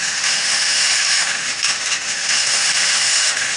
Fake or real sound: fake